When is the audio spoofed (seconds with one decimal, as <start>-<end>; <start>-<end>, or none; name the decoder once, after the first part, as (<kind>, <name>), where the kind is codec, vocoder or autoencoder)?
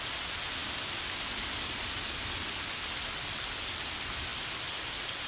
none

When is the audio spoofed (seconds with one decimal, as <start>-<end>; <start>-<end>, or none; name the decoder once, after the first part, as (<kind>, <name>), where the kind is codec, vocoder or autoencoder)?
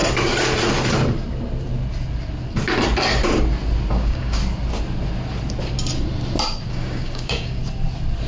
3.9-4.4 (codec, DAC); 6.7-7.6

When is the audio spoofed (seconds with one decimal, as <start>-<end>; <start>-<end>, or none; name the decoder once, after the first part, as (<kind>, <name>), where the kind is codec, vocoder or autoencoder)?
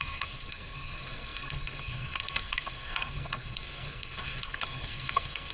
0.0-5.5 (codec, SNAC)